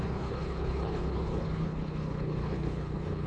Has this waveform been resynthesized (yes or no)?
yes